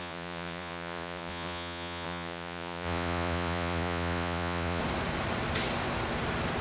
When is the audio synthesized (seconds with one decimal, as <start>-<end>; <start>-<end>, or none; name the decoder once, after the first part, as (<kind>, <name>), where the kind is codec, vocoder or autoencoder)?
0.0-4.8 (vocoder, Vocos)

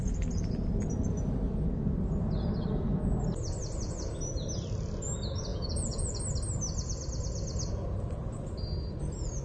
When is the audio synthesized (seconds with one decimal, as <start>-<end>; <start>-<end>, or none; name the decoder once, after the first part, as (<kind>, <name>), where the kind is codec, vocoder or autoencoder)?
5.5-6.2 (vocoder, Vocos)

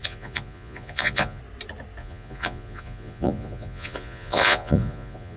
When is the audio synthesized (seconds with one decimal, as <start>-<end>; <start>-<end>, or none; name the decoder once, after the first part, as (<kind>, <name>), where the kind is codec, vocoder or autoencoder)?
0.0-1.4 (vocoder, Vocos); 2.0-5.4

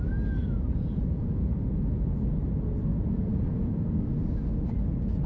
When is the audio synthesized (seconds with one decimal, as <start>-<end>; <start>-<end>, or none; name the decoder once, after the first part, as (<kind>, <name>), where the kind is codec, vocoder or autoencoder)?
0.4-2.4 (vocoder, Vocos); 2.9-3.9

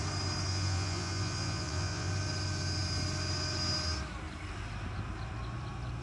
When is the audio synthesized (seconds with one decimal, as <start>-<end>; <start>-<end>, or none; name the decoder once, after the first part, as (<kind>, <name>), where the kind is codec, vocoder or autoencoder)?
0.5-2.1 (vocoder, Vocos)

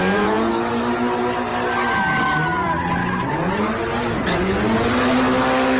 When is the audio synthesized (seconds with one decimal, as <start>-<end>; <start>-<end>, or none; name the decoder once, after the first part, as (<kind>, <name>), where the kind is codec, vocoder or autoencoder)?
0.0-0.5 (vocoder, Vocos)

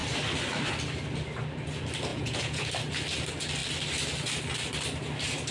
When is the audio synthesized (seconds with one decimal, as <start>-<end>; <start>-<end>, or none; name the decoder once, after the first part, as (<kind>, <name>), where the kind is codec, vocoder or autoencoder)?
2.1-2.7 (vocoder, Vocos)

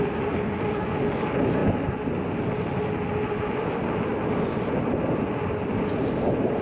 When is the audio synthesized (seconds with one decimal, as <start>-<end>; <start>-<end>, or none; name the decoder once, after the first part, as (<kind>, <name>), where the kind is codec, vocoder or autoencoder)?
none